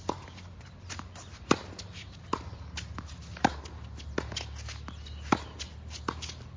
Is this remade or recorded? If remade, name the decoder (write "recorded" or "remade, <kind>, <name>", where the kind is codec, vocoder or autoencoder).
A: recorded